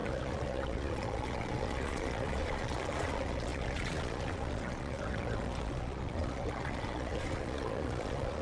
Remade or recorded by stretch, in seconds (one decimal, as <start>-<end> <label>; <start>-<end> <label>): 0.0-8.4 remade